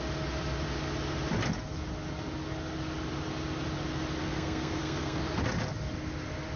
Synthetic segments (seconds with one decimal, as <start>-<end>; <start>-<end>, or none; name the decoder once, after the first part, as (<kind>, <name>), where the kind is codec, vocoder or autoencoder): 4.2-5.2 (codec, SNAC)